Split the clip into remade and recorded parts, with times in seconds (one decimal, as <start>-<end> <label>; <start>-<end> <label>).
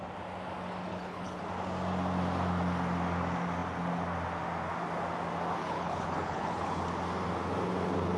0.0-0.9 recorded; 0.9-1.4 remade; 1.4-5.6 recorded; 5.6-6.8 remade; 6.8-8.2 recorded